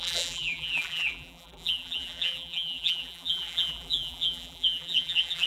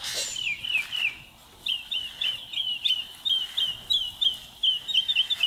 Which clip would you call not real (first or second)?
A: first